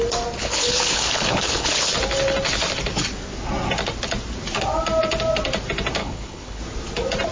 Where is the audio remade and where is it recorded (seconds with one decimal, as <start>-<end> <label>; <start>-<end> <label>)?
0.0-0.4 recorded; 0.4-1.9 remade; 1.9-6.0 recorded; 6.0-6.6 remade; 6.6-7.3 recorded